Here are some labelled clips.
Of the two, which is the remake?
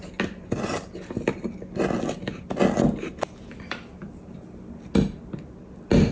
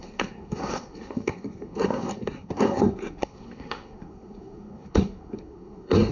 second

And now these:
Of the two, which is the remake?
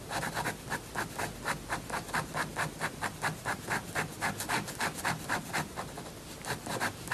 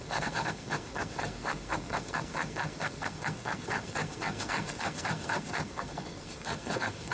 second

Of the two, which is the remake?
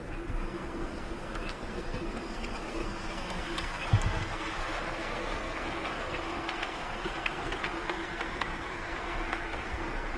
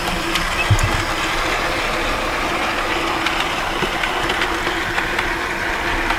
first